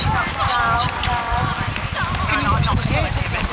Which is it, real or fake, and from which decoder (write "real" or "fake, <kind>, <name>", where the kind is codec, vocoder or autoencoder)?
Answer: real